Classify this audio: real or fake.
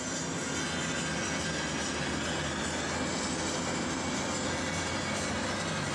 real